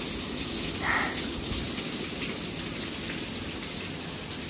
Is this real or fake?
real